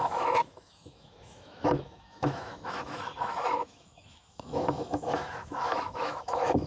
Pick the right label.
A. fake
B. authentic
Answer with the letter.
A